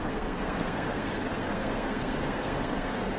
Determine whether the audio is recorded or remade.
remade